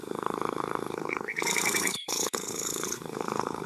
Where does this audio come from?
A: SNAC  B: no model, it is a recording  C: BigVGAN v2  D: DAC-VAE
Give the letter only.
A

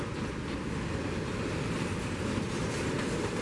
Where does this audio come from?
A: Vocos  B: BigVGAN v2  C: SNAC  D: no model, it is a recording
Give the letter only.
D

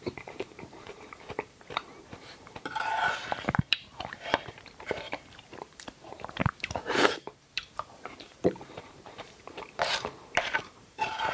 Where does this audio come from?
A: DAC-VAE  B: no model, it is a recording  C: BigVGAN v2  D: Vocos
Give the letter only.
C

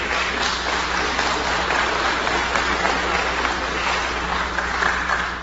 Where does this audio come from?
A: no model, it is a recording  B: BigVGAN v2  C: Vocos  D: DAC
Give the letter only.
A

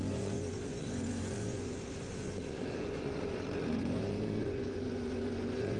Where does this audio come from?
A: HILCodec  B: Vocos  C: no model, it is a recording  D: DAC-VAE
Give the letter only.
B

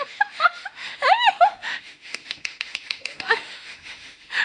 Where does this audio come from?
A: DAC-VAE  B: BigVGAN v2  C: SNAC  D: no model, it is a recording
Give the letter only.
A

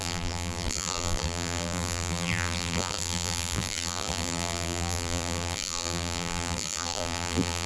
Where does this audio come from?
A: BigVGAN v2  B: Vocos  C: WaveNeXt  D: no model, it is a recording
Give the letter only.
A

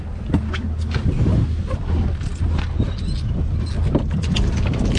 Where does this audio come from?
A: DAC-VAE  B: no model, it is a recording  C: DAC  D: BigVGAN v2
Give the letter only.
B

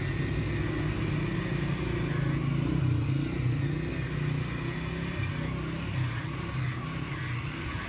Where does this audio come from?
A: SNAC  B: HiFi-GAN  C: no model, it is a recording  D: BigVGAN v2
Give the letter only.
C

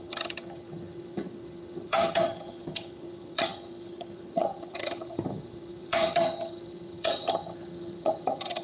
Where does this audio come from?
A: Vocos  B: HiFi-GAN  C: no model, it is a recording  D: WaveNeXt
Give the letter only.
B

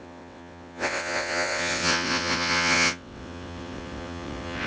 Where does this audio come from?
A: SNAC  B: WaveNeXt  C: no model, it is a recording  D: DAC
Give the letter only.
B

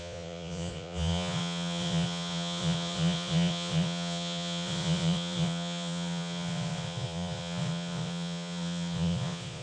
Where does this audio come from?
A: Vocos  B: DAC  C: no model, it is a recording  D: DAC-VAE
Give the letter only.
A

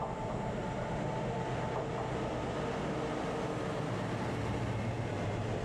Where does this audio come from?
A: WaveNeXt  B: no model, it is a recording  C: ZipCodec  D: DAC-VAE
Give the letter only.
B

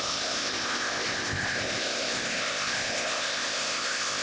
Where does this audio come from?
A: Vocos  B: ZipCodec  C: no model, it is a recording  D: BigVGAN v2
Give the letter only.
B